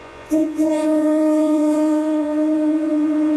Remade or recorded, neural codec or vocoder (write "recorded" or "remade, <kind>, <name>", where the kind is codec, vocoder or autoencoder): remade, vocoder, Vocos